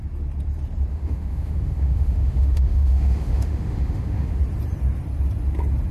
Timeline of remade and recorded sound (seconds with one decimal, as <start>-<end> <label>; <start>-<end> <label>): 0.0-0.9 recorded; 0.9-4.4 remade; 4.4-5.9 recorded